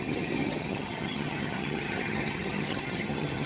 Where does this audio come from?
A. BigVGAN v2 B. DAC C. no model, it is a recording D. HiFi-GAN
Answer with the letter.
D